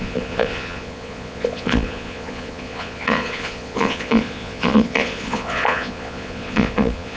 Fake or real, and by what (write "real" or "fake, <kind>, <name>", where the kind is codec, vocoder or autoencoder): fake, vocoder, Vocos